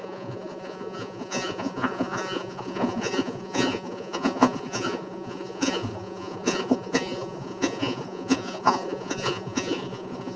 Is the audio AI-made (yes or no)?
yes